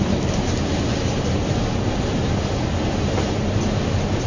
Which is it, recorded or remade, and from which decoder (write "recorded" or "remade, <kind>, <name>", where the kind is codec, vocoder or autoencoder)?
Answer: recorded